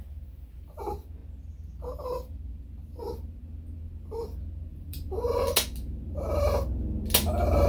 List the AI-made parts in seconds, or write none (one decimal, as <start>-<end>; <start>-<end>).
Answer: 4.7-5.3